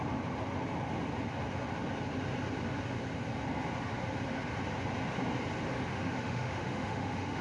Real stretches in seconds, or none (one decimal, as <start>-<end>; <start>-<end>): 0.0-5.9